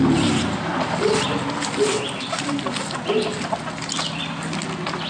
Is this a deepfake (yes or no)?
no